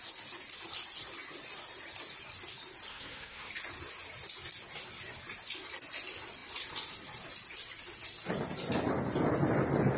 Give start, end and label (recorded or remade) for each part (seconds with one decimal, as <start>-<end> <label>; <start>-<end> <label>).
0.0-2.9 recorded; 2.9-3.5 remade; 3.5-10.0 recorded